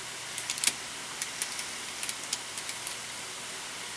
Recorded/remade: recorded